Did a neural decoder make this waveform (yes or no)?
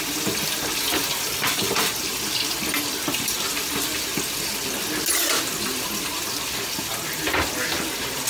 no